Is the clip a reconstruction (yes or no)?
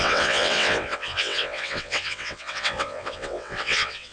yes